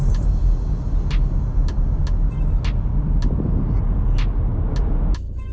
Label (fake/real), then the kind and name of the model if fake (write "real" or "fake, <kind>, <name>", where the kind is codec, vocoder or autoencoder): real